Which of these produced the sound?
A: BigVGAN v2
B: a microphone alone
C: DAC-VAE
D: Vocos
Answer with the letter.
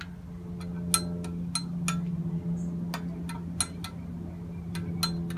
B